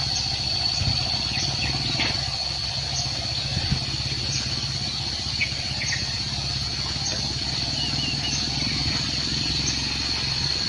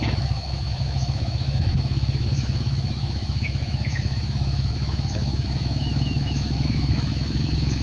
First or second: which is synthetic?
second